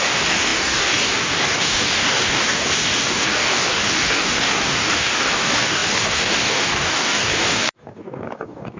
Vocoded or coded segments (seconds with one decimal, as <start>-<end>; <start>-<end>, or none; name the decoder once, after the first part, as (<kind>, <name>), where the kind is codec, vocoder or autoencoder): 0.0-8.8 (codec, DAC)